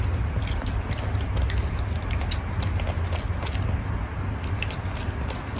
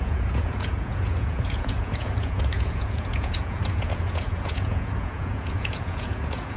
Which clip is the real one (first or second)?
first